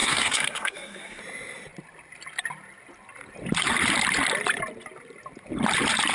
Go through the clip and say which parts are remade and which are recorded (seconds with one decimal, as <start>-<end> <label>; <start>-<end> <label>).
0.0-1.2 remade; 1.2-6.1 recorded